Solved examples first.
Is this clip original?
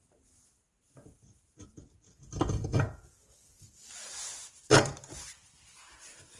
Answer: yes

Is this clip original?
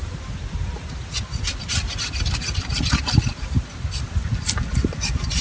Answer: yes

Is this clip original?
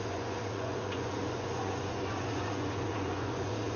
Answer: no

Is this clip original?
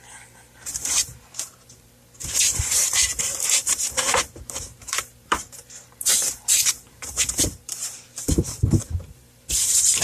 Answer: no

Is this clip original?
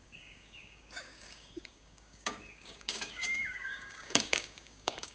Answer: no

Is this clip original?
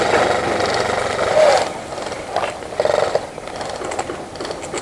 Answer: yes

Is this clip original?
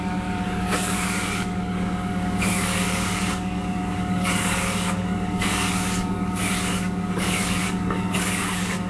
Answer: no